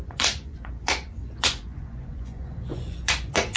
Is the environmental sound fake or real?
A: fake